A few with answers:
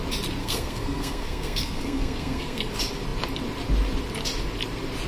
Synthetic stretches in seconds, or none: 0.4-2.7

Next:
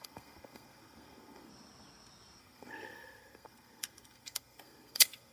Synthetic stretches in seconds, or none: 0.0-1.5; 2.4-5.3

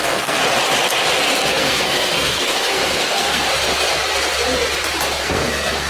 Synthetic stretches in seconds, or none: 0.0-0.4; 1.5-3.5; 5.2-5.9